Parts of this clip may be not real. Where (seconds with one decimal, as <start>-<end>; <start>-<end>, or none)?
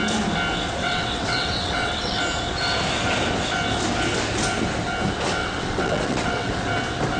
0.8-2.2; 5.4-6.5